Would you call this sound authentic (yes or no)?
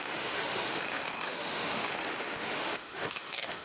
no